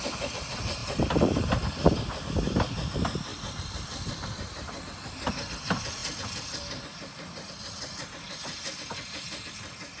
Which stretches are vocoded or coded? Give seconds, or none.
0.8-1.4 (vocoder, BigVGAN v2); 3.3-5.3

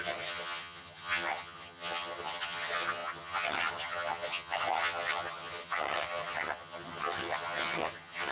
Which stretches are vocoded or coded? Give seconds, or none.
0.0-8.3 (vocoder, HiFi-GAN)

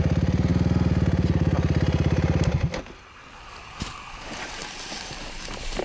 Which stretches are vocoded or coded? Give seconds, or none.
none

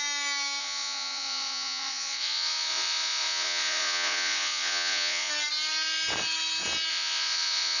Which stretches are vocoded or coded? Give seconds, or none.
0.6-5.3 (vocoder, Vocos); 6.9-7.8

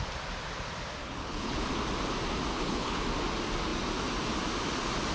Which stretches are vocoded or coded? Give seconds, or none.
1.0-1.6 (codec, HILCodec); 2.5-3.0

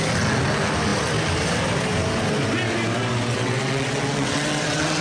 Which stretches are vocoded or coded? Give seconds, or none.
3.3-5.0 (vocoder, WaveNeXt)

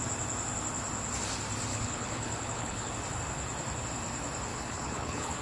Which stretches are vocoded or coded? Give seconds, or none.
1.7-2.9 (codec, HILCodec); 4.5-5.4

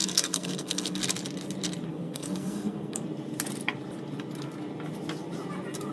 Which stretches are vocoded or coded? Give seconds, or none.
0.0-1.0 (codec, SNAC); 1.9-3.0